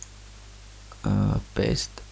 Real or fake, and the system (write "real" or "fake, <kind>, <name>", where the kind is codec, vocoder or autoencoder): real